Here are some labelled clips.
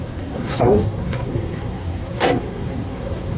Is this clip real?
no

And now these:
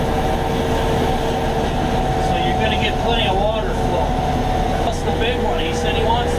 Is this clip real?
yes